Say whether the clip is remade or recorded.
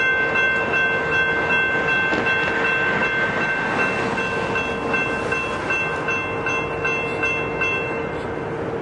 recorded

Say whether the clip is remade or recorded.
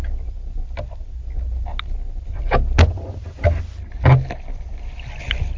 recorded